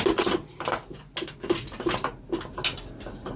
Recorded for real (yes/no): yes